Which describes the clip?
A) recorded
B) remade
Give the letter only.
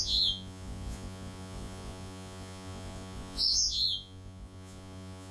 B